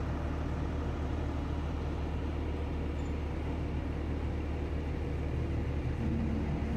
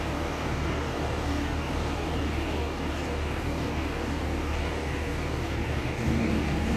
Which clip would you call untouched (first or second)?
first